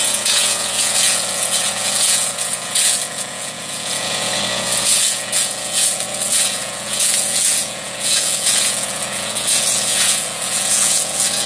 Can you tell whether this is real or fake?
fake